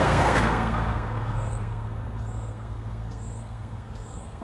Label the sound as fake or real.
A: fake